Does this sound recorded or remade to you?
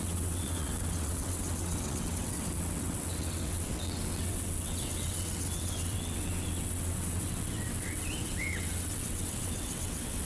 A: remade